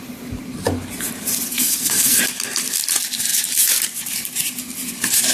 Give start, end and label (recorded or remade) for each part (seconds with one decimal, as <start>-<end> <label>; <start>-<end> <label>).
0.0-1.5 recorded; 1.5-2.2 remade; 2.2-5.3 recorded